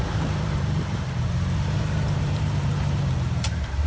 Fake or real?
fake